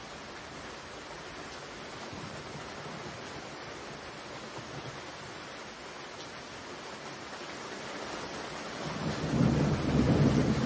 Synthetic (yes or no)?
no